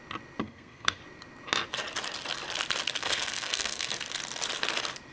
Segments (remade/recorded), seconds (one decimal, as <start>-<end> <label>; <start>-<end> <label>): 0.0-0.4 recorded; 0.4-1.0 remade; 1.0-3.0 recorded; 3.0-3.9 remade; 3.9-5.1 recorded